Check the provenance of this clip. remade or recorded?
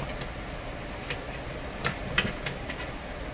recorded